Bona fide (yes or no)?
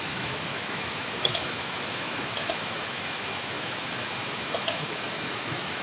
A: no